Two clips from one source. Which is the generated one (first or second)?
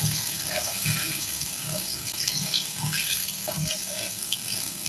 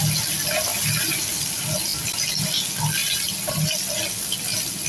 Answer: first